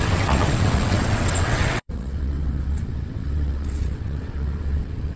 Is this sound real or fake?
fake